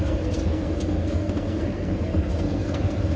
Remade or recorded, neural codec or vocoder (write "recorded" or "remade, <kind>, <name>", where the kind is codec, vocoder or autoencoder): remade, codec, SNAC